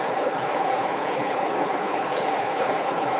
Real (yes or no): no